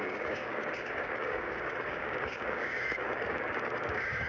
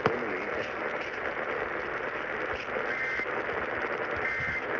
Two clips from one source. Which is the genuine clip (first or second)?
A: second